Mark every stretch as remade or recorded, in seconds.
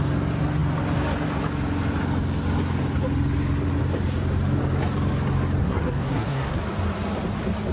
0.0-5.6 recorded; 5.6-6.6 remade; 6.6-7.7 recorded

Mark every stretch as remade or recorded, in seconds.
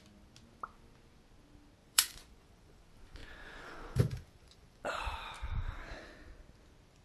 0.0-1.8 recorded; 1.8-2.8 remade; 2.8-3.2 recorded; 3.2-4.8 remade; 4.8-7.0 recorded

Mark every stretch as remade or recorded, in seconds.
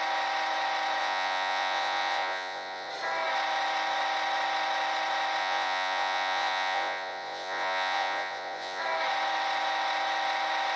0.0-1.0 recorded; 1.0-2.9 remade; 2.9-5.4 recorded; 5.4-8.8 remade; 8.8-10.8 recorded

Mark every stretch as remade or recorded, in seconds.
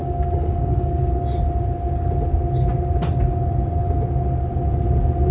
0.0-0.9 remade; 0.9-5.3 recorded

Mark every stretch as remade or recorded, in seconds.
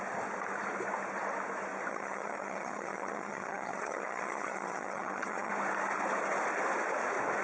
0.0-1.9 recorded; 1.9-5.5 remade; 5.5-7.4 recorded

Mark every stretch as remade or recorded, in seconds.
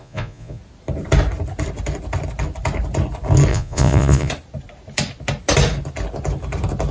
0.0-0.6 remade; 0.6-3.5 recorded; 3.5-4.3 remade; 4.3-6.9 recorded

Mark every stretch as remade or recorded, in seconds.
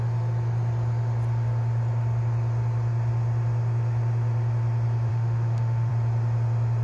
0.0-5.1 recorded; 5.1-5.9 remade; 5.9-6.8 recorded